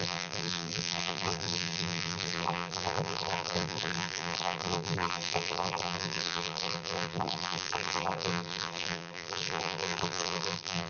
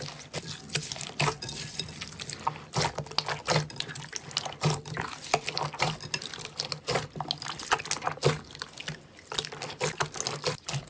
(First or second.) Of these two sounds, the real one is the second